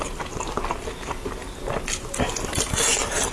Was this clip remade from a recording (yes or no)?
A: no